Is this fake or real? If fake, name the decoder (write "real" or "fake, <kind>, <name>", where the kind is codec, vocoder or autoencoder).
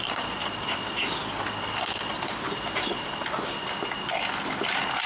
real